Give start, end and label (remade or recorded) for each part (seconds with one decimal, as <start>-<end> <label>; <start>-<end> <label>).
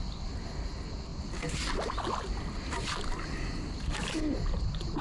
0.0-5.0 recorded